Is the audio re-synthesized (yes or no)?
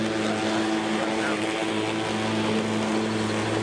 no